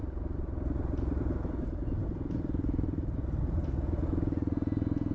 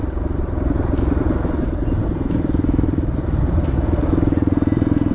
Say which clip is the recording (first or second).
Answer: first